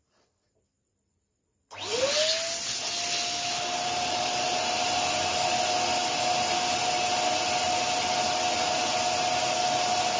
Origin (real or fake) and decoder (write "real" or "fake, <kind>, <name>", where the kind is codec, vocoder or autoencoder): real